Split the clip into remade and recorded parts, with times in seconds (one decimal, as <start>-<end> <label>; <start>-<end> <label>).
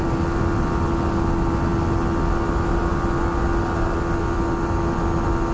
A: 0.0-5.5 recorded